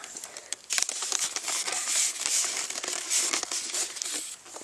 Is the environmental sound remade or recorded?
remade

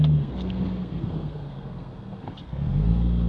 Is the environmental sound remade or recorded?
remade